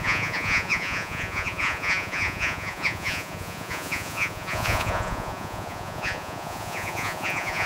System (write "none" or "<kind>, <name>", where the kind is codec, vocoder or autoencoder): vocoder, Vocos